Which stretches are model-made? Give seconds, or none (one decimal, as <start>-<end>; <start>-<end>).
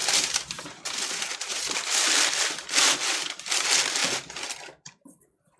4.0-5.6